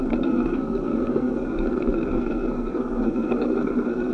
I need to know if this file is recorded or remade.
remade